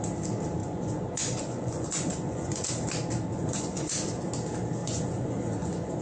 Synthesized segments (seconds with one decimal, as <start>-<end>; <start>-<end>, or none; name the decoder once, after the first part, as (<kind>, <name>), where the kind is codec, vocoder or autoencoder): 0.6-2.7 (vocoder, Vocos); 3.3-3.9; 4.8-6.0